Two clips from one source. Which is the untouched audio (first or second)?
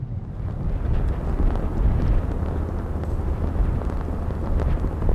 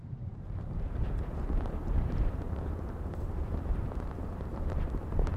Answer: first